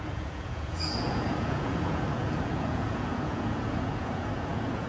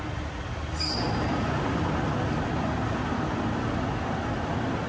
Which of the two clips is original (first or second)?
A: second